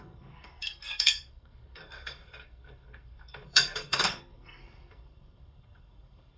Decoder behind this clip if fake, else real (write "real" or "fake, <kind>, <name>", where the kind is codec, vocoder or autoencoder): fake, codec, SNAC